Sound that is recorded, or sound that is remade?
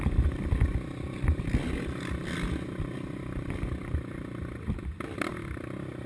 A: recorded